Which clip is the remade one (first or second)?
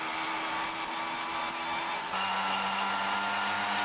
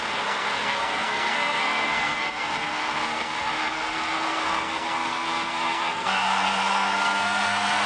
second